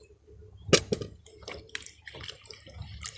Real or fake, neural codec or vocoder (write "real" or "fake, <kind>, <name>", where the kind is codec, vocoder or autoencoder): real